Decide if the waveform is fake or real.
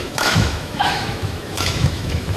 fake